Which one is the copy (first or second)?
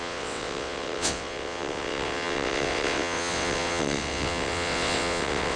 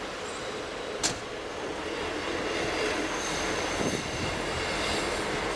first